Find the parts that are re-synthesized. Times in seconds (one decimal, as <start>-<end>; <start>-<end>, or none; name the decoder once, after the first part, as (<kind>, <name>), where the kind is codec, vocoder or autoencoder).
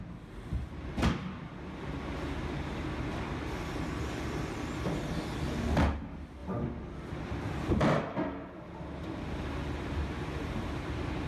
6.4-7.7 (vocoder, BigVGAN v2)